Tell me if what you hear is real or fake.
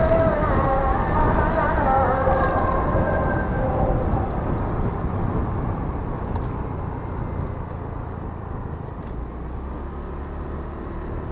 real